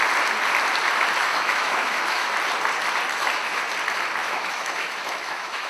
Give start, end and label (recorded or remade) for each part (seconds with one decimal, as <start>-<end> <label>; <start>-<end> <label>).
0.0-1.2 recorded; 1.2-2.3 remade; 2.3-3.1 recorded; 3.1-3.6 remade; 3.6-4.2 recorded; 4.2-5.7 remade